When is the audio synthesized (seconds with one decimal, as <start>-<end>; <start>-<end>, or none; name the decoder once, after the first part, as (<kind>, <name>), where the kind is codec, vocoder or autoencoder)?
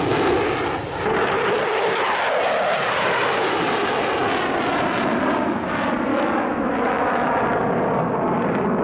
6.1-7.4 (autoencoder, DAC-VAE)